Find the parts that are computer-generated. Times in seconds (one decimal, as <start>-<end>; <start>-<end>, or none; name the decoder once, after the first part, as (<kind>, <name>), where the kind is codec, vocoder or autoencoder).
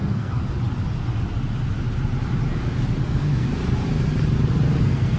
0.0-0.4 (codec, SNAC); 3.0-3.5; 4.8-5.2